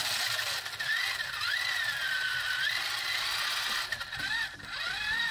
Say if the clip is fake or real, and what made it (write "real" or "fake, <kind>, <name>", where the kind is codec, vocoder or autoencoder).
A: real